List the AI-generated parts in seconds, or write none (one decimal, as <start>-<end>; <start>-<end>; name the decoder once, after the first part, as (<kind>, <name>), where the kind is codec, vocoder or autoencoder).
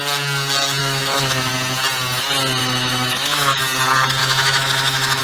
0.8-1.5 (autoencoder, DAC-VAE); 2.6-3.6; 4.2-5.2